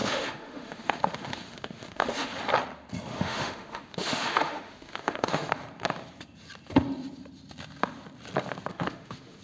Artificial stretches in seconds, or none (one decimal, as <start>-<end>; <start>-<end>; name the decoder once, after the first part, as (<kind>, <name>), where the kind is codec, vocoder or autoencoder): 0.0-2.3 (autoencoder, DAC-VAE); 3.1-5.5; 8.7-9.4